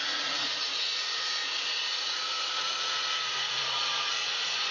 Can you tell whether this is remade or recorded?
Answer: remade